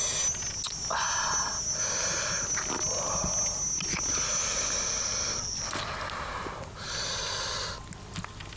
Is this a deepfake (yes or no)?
no